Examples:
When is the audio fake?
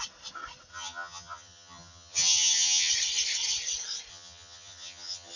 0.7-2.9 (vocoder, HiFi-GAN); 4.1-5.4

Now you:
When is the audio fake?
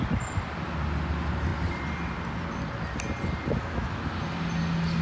3.6-4.1 (autoencoder, DAC-VAE)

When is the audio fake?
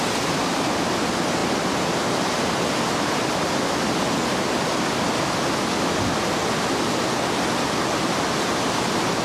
none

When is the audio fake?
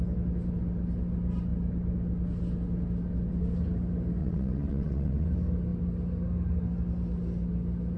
4.2-5.3 (vocoder, WaveNeXt)